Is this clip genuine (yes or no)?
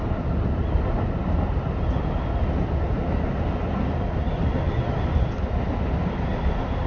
yes